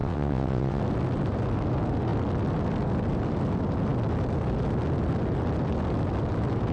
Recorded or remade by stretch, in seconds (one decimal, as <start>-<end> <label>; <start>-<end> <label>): 0.0-0.8 remade; 0.8-6.7 recorded

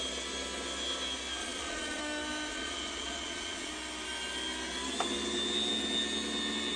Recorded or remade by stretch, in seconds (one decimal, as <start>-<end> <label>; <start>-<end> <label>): 0.0-1.4 recorded; 1.4-2.0 remade; 2.0-2.5 recorded; 2.5-3.7 remade; 3.7-6.8 recorded

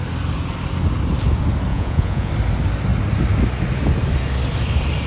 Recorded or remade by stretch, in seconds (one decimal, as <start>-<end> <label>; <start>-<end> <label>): 0.0-1.7 recorded; 1.7-2.3 remade; 2.3-5.1 recorded

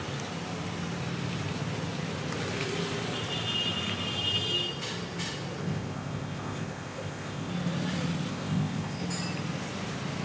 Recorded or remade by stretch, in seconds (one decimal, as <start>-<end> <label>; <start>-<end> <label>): 0.0-5.6 recorded; 5.6-7.5 remade; 7.5-8.3 recorded; 8.3-9.0 remade; 9.0-10.2 recorded

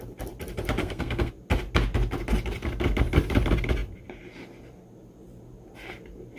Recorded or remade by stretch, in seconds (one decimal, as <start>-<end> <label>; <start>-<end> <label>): 0.0-0.8 recorded; 0.8-1.3 remade; 1.3-6.4 recorded